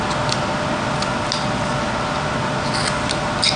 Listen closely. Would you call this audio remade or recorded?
recorded